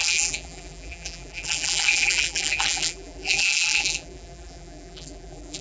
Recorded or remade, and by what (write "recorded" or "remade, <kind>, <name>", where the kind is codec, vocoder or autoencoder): remade, vocoder, BigVGAN v2